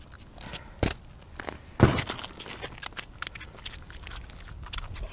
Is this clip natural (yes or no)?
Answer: yes